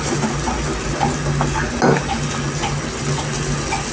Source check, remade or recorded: recorded